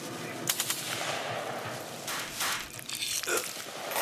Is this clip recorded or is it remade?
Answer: recorded